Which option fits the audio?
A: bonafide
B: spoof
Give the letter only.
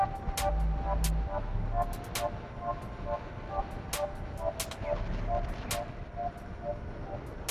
A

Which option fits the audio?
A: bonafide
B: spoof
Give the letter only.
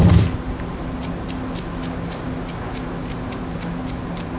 A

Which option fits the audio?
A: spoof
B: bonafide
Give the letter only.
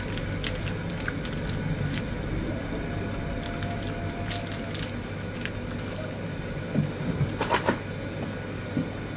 B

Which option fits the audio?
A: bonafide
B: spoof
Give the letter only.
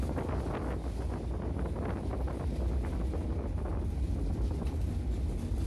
A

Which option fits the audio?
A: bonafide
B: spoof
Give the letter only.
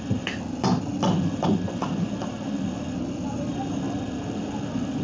A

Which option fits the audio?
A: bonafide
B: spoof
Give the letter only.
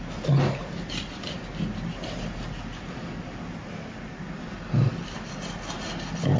A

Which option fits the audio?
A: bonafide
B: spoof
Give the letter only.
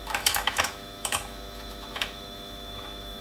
B